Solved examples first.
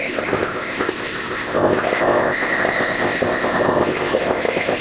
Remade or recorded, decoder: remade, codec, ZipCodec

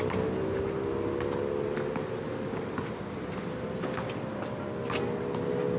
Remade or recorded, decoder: recorded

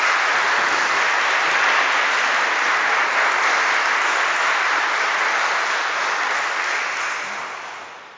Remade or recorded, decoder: recorded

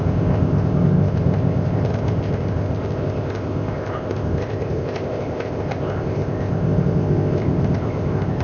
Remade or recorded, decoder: remade, codec, ZipCodec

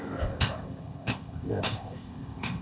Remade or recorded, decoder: remade, codec, ZipCodec